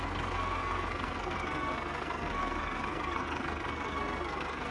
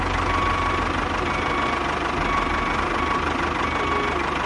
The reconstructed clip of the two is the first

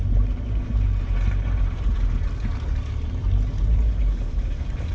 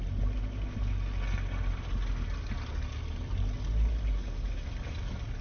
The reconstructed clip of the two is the first